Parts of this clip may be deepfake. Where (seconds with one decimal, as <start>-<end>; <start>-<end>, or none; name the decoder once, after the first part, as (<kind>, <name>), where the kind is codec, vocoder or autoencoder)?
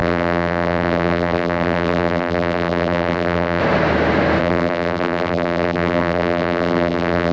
0.0-3.6 (vocoder, BigVGAN v2); 4.4-7.3